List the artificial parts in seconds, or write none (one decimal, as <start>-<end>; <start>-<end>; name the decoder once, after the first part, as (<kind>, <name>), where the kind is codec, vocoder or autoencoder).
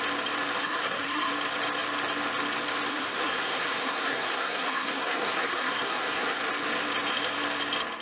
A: 0.6-1.3 (codec, SNAC); 2.9-6.4